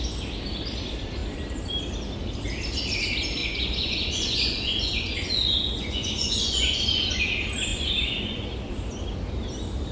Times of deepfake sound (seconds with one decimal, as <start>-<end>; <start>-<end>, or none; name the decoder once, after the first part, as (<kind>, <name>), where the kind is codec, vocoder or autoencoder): 3.4-7.2 (vocoder, Vocos); 7.7-8.5